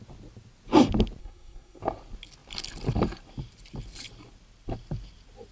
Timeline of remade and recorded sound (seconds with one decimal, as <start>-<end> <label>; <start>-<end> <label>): 0.0-1.2 recorded; 1.2-1.8 remade; 1.8-5.5 recorded